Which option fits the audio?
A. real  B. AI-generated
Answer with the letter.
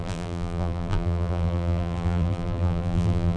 B